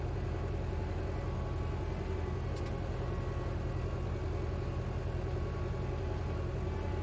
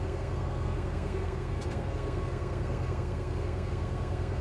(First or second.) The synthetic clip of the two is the second